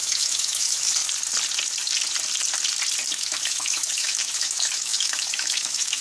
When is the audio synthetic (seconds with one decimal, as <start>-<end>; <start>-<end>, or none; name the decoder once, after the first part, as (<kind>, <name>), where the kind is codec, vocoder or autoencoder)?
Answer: 0.0-1.0 (autoencoder, DAC-VAE); 3.1-6.0